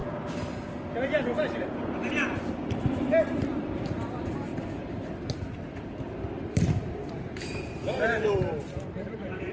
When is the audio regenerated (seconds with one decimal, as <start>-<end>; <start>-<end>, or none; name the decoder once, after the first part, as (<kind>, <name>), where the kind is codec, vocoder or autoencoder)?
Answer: 1.6-4.5 (vocoder, BigVGAN v2); 6.4-9.5